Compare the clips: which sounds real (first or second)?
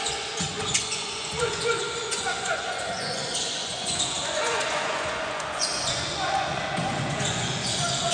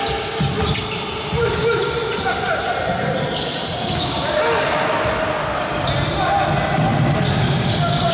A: second